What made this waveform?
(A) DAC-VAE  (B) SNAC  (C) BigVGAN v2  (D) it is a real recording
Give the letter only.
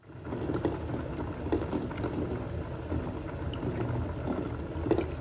D